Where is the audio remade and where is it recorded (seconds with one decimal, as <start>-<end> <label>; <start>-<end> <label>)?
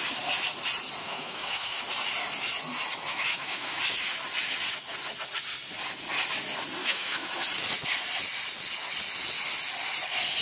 0.0-1.0 recorded; 1.0-1.8 remade; 1.8-3.1 recorded; 3.1-3.8 remade; 3.8-6.8 recorded; 6.8-7.3 remade; 7.3-10.4 recorded